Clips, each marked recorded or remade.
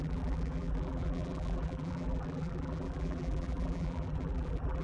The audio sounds remade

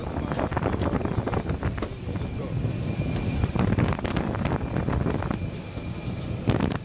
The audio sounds remade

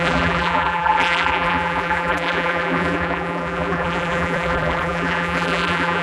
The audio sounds remade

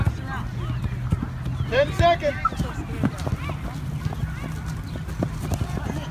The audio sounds recorded